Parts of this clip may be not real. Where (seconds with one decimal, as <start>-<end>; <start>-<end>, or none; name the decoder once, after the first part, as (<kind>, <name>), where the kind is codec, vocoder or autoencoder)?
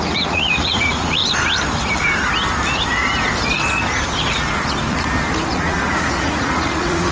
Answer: 0.0-1.2 (vocoder, Vocos); 5.5-7.1